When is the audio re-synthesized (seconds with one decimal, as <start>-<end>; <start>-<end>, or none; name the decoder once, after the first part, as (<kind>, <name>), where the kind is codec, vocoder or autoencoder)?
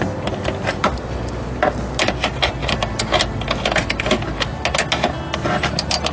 none